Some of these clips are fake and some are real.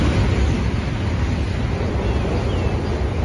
real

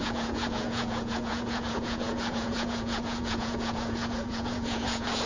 fake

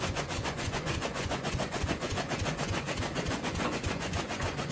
fake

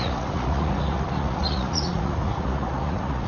fake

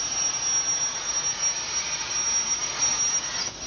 real